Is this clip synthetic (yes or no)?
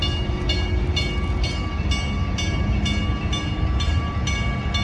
no